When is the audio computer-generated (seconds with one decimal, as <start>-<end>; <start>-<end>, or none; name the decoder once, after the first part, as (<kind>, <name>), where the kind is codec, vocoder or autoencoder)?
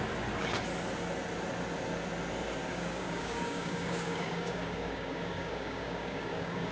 2.6-6.7 (codec, DAC)